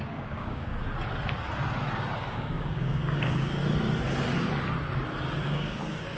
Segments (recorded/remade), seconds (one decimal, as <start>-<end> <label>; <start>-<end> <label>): 0.0-0.8 remade; 0.8-2.2 recorded; 2.2-3.6 remade; 3.6-5.4 recorded; 5.4-6.2 remade